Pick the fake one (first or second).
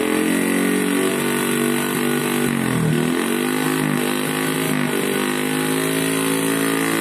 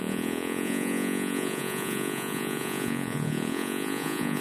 second